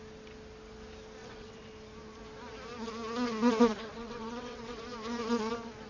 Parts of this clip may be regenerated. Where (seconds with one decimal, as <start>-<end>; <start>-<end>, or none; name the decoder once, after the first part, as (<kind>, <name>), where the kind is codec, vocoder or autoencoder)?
1.2-1.7 (vocoder, WaveNeXt); 3.7-4.8

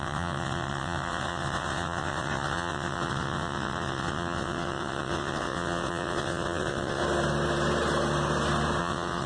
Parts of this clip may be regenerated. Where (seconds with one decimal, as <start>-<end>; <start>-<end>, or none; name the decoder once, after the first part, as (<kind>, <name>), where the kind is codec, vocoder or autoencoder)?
0.0-7.0 (vocoder, WaveNeXt); 8.8-9.3

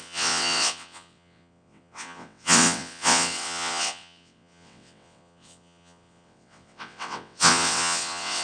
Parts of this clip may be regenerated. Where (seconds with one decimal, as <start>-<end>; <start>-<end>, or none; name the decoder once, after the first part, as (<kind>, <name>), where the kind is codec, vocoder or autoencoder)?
0.0-8.4 (vocoder, WaveNeXt)

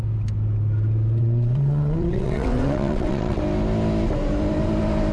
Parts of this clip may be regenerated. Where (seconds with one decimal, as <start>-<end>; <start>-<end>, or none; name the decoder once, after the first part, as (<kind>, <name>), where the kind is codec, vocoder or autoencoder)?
1.2-3.4 (vocoder, WaveNeXt)

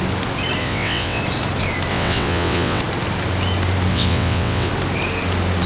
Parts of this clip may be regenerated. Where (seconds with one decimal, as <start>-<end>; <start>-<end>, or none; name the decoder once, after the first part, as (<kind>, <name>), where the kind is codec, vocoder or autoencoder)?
0.6-1.2 (vocoder, WaveNeXt); 1.9-2.8; 3.9-4.7